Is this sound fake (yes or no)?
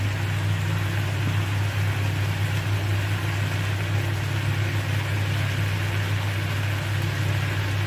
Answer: no